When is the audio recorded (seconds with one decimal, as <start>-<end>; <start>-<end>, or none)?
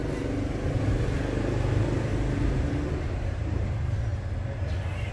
0.0-1.4; 2.1-2.9; 4.1-5.1